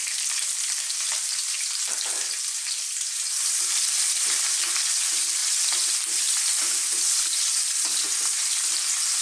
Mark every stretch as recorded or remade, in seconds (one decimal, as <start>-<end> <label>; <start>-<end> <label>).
0.0-1.0 recorded; 1.0-5.4 remade; 5.4-5.9 recorded; 5.9-9.2 remade

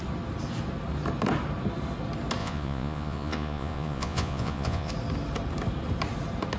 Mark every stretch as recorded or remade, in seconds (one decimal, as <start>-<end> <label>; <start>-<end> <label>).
0.0-2.4 recorded; 2.4-4.9 remade; 4.9-6.6 recorded

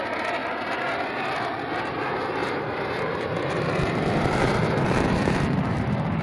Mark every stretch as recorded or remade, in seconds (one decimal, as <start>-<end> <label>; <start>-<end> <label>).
0.0-0.4 remade; 0.4-1.8 recorded; 1.8-6.2 remade

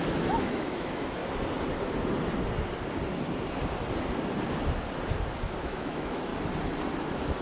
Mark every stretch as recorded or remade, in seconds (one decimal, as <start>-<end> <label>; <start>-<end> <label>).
0.0-1.2 remade; 1.2-5.6 recorded; 5.6-6.3 remade; 6.3-7.0 recorded; 7.0-7.4 remade